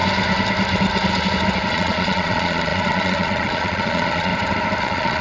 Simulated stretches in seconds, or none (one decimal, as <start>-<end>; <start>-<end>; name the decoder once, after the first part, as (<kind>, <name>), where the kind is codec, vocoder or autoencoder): 1.7-4.3 (vocoder, Vocos); 4.8-5.2